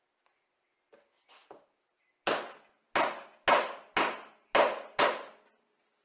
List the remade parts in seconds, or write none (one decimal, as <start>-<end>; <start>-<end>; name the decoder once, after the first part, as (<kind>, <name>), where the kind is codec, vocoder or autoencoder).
none